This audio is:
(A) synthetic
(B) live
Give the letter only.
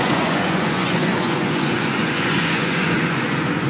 A